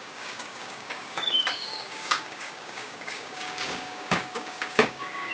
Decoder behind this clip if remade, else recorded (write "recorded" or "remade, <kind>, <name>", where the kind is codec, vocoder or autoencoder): remade, codec, DAC